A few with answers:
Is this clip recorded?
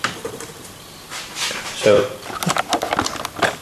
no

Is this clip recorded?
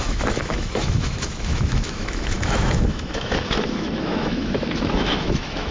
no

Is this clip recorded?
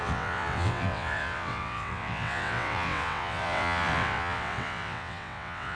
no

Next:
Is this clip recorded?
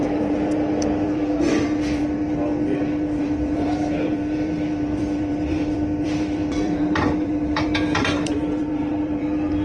no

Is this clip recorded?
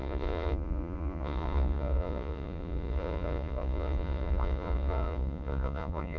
no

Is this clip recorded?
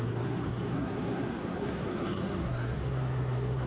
no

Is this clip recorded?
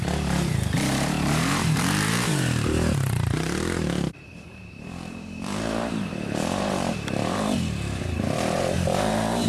no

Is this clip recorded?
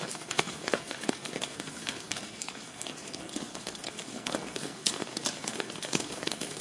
no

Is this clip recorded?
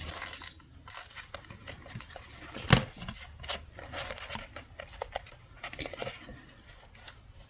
yes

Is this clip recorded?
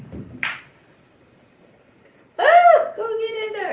no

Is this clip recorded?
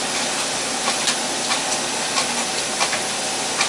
yes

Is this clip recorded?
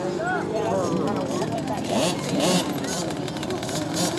no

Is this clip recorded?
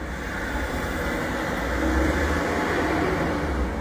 yes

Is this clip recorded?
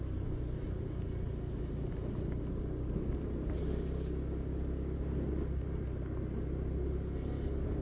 yes